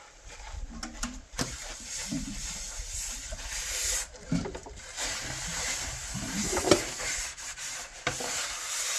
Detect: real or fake fake